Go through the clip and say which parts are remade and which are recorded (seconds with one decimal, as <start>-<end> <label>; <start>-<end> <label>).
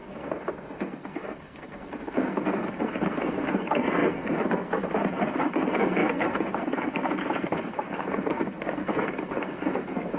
0.0-10.2 remade